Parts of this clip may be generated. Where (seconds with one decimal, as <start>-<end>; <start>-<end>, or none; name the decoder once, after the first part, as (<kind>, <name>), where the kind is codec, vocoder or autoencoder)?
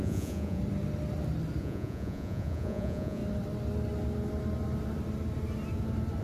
0.0-0.6 (vocoder, Vocos); 1.6-3.2